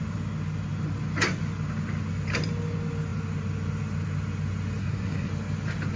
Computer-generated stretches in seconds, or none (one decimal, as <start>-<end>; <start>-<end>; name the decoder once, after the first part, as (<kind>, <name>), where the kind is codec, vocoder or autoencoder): 4.8-5.3 (codec, SNAC)